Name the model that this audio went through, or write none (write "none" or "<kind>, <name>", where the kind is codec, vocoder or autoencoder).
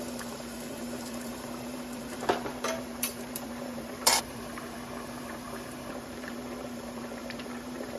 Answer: vocoder, BigVGAN v2